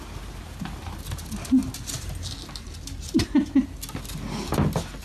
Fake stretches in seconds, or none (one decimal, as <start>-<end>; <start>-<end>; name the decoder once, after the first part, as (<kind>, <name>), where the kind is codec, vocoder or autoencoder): none